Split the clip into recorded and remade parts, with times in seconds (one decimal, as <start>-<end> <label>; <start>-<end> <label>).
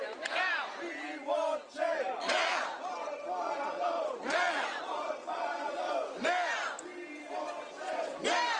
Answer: 0.0-1.9 recorded; 1.9-5.9 remade; 5.9-8.6 recorded